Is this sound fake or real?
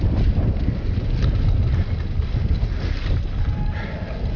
real